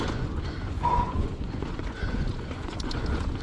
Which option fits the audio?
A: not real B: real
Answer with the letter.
A